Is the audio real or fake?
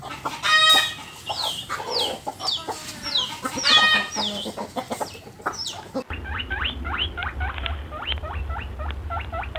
real